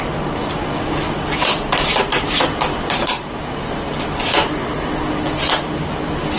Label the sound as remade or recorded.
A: recorded